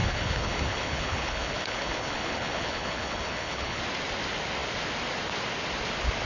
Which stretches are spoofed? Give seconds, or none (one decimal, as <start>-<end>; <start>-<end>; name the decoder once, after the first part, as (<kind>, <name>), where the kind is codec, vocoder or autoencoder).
0.0-3.8 (codec, HILCodec)